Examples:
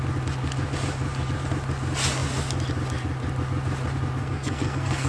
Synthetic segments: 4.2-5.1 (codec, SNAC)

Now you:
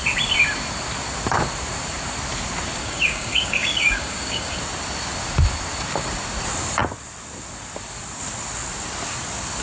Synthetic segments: 2.8-4.6 (codec, DAC)

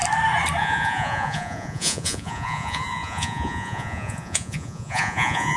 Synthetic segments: 0.6-5.6 (vocoder, Vocos)

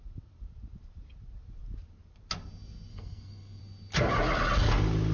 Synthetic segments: 2.9-3.6 (codec, SNAC)

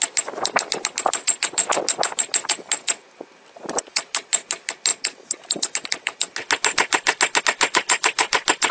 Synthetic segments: none

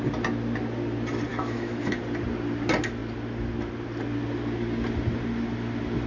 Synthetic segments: 1.3-2.0 (autoencoder, DAC-VAE)